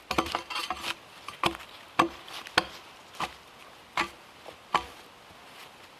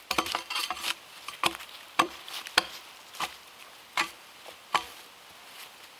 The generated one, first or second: second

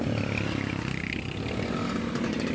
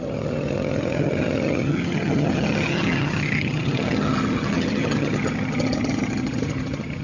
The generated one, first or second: second